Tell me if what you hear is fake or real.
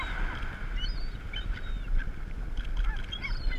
real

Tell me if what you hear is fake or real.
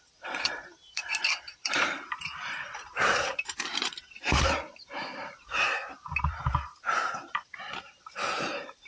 fake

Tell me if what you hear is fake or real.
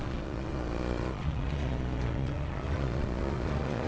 fake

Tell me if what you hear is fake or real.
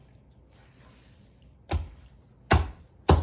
real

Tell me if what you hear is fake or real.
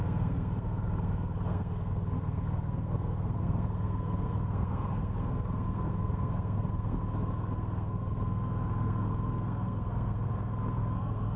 fake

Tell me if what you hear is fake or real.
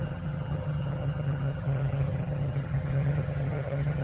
fake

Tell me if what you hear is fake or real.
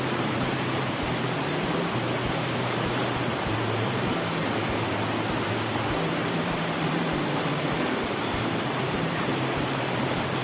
fake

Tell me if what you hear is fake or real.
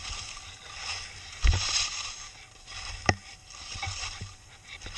real